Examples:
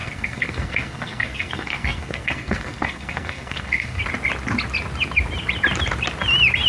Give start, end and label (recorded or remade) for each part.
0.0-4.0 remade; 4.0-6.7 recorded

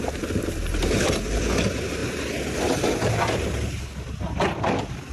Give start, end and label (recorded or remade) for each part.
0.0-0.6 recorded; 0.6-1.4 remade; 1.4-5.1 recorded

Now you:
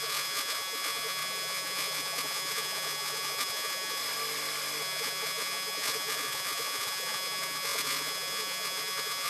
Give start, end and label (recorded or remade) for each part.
0.0-4.0 remade; 4.0-4.8 recorded; 4.8-9.3 remade

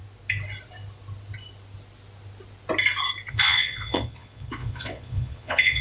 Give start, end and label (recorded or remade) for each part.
0.0-3.3 recorded; 3.3-5.8 remade

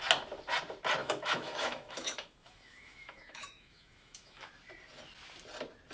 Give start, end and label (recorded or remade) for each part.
0.0-1.0 recorded; 1.0-4.5 remade; 4.5-5.9 recorded